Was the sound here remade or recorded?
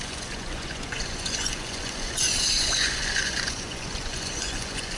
remade